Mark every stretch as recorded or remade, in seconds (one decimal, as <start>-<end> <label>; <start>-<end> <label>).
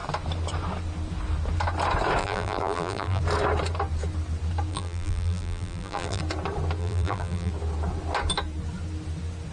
0.0-2.2 recorded; 2.2-3.2 remade; 3.2-4.7 recorded; 4.7-6.2 remade; 6.2-6.8 recorded; 6.8-7.5 remade; 7.5-9.5 recorded